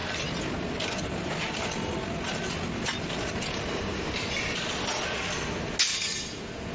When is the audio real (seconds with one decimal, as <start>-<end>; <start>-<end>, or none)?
0.0-6.7